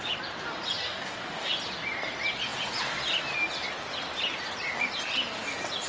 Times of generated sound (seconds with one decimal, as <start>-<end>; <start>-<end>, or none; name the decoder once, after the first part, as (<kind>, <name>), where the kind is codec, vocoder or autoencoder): 0.8-1.5 (codec, DAC)